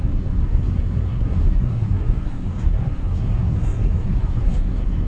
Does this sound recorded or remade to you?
remade